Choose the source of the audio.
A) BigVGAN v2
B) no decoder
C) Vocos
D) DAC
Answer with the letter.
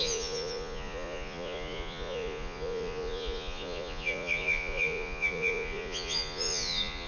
C